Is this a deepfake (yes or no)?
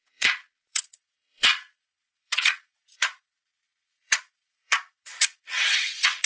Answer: yes